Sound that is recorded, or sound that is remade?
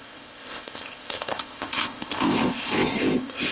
remade